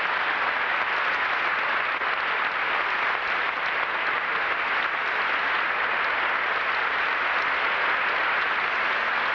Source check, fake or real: real